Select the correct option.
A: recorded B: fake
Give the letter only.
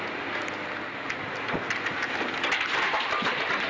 A